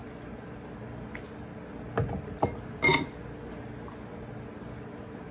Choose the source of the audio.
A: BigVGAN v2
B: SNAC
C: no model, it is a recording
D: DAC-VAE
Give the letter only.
C